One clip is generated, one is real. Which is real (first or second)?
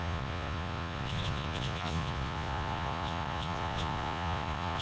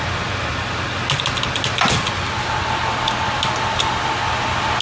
second